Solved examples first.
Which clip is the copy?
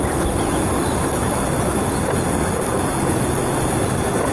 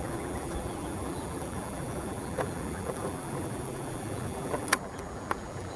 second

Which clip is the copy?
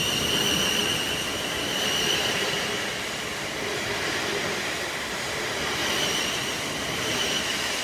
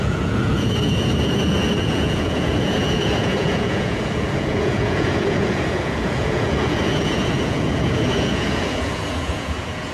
second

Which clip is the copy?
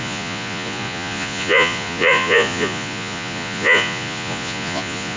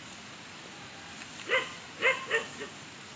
first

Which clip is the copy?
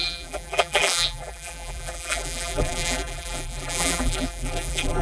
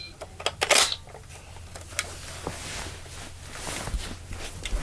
first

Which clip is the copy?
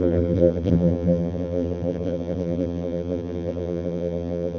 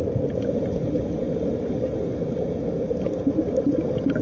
first